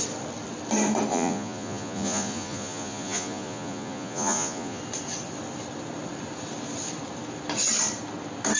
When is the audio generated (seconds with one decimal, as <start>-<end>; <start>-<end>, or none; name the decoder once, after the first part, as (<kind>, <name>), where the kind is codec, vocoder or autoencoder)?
1.1-4.8 (vocoder, Vocos)